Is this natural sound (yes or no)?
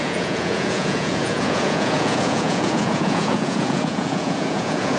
no